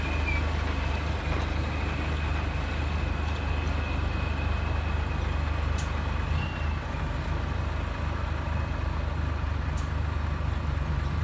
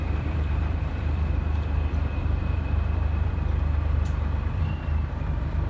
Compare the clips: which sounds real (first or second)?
first